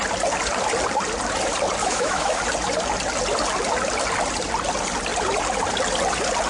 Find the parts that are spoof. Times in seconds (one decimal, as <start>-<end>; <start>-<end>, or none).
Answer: 1.8-2.4

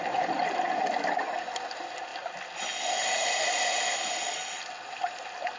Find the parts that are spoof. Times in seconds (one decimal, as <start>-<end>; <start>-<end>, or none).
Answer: none

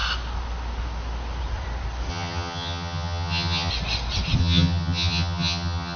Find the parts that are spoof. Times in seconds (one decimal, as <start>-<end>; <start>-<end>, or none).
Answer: 2.1-3.7; 4.4-6.0

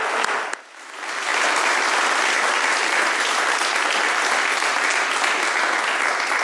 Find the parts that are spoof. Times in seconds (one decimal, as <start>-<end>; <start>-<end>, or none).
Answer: none

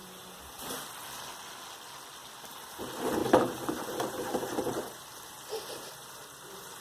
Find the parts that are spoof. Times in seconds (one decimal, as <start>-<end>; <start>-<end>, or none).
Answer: 2.5-6.8

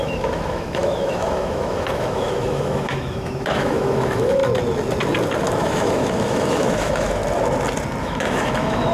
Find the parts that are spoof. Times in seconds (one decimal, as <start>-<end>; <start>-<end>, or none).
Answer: 0.0-4.4; 5.5-7.2; 8.0-8.9

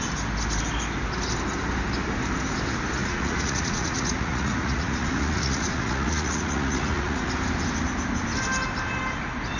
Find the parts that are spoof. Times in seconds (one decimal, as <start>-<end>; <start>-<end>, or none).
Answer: 3.0-7.3

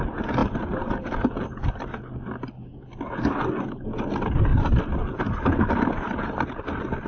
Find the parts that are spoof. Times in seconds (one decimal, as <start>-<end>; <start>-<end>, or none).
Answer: 0.4-1.5; 4.5-5.7